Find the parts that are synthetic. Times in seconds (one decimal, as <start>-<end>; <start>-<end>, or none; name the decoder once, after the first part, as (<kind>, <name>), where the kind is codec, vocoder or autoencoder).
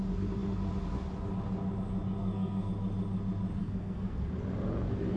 2.2-2.7 (codec, SNAC); 3.6-4.3